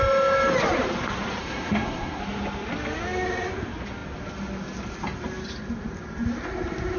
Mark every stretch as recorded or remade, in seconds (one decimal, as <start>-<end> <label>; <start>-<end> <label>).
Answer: 0.0-1.4 recorded; 1.4-2.2 remade; 2.2-7.0 recorded